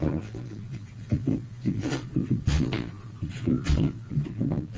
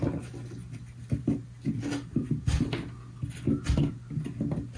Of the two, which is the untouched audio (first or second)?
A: second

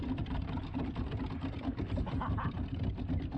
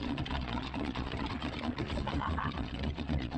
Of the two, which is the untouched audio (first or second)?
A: first